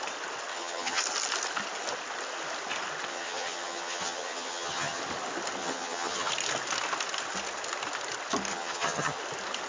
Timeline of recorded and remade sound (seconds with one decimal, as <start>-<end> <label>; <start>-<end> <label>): 0.0-0.5 recorded; 0.5-1.0 remade; 1.0-3.1 recorded; 3.1-5.0 remade; 5.0-5.6 recorded; 5.6-6.3 remade; 6.3-8.5 recorded; 8.5-9.2 remade; 9.2-9.7 recorded